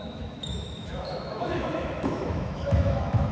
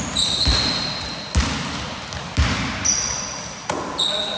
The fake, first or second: first